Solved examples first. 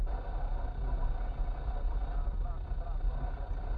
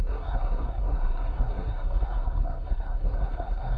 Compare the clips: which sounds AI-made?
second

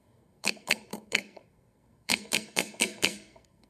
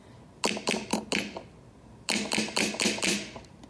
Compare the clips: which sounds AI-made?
first